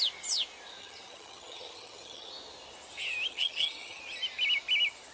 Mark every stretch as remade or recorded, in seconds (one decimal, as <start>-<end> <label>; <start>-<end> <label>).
0.0-0.8 recorded; 0.8-2.3 remade; 2.3-3.3 recorded; 3.3-4.0 remade; 4.0-5.1 recorded